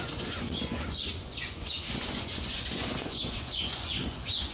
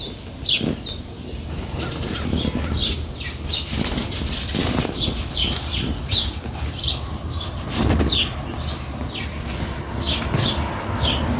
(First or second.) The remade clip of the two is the first